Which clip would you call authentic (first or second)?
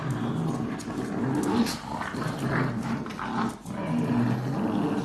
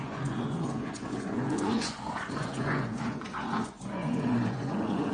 first